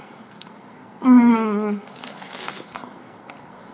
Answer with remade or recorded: remade